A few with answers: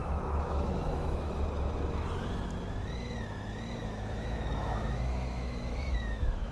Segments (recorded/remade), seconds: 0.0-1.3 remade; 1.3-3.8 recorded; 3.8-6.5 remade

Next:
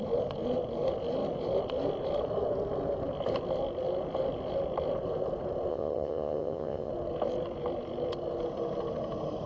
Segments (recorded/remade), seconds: 0.0-5.7 recorded; 5.7-6.9 remade; 6.9-9.5 recorded

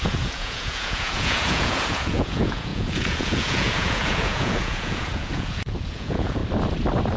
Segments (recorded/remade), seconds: 0.0-6.4 remade; 6.4-7.2 recorded

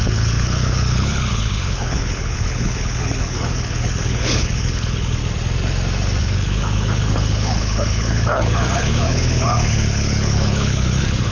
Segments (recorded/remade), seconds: 0.0-5.2 remade; 5.2-6.2 recorded; 6.2-11.3 remade

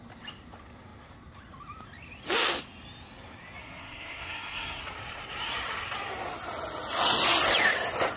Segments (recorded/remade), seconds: 0.0-3.6 recorded; 3.6-4.8 remade; 4.8-8.2 recorded